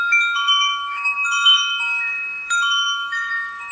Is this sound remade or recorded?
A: remade